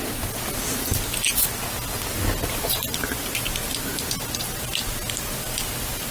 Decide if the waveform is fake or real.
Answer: real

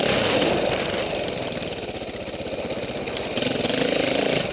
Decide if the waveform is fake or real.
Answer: real